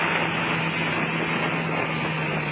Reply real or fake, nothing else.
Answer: real